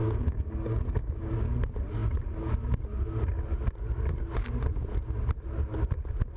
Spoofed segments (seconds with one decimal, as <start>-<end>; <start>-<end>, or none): 0.0-1.5